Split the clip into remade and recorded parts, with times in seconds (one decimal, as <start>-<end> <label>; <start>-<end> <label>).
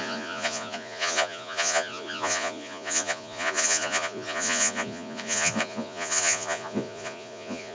0.0-7.7 remade